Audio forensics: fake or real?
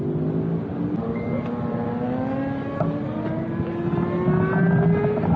real